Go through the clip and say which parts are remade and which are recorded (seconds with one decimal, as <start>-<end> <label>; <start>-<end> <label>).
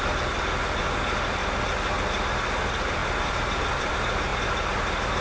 0.0-1.4 remade; 1.4-1.9 recorded; 1.9-4.3 remade; 4.3-5.2 recorded